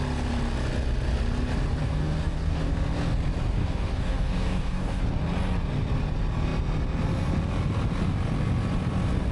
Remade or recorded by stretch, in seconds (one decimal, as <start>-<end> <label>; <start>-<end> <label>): 0.0-1.8 recorded; 1.8-2.6 remade; 2.6-3.6 recorded; 3.6-5.0 remade; 5.0-9.3 recorded